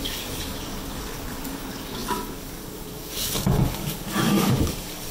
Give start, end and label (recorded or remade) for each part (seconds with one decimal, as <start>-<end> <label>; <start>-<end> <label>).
0.0-5.1 remade